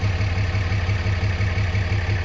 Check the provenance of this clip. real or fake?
real